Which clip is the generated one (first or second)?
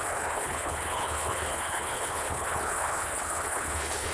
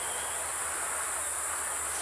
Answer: first